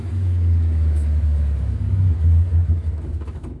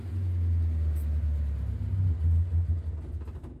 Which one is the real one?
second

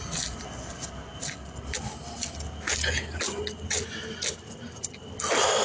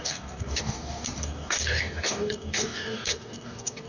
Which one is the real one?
first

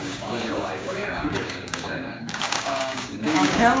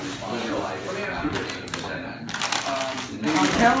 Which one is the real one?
second